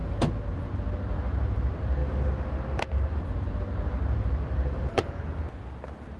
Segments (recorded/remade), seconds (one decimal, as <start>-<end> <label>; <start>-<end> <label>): 0.0-2.0 remade; 2.0-2.8 recorded; 2.8-6.2 remade